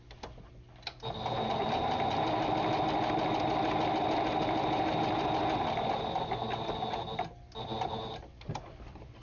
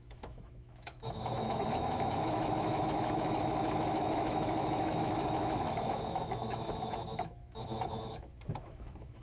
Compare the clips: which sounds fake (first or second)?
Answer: second